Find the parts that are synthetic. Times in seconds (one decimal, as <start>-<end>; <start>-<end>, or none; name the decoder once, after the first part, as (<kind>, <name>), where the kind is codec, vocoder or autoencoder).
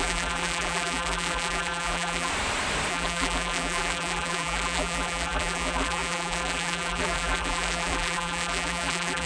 0.0-2.3 (vocoder, BigVGAN v2); 2.9-9.3